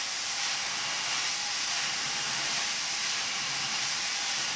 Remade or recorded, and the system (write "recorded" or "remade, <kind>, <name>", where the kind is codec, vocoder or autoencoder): remade, vocoder, BigVGAN v2